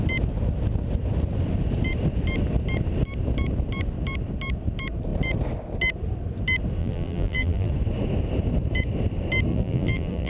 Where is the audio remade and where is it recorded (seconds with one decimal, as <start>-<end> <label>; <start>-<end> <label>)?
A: 0.0-6.8 recorded; 6.8-7.7 remade; 7.7-9.5 recorded; 9.5-10.3 remade